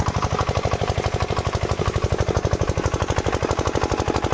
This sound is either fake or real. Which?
real